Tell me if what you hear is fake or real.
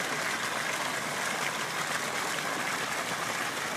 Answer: real